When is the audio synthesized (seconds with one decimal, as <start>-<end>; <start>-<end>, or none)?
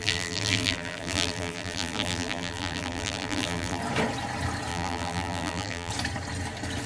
0.0-3.8; 4.7-5.9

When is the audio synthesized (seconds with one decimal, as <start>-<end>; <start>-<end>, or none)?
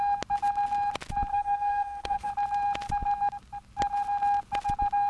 1.3-2.3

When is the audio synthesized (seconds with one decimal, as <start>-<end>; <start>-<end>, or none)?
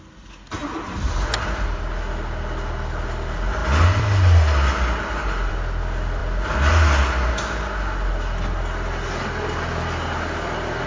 none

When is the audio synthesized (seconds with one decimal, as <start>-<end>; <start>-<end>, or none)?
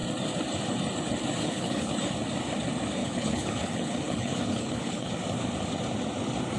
1.4-1.9; 3.0-5.1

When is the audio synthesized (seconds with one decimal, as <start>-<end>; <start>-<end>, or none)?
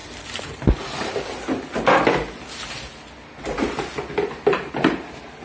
0.0-1.1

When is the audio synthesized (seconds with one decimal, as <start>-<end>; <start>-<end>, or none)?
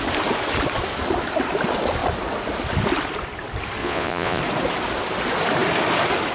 3.8-4.4